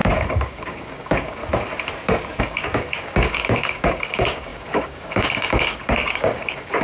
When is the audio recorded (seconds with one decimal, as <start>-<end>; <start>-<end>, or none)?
1.4-2.4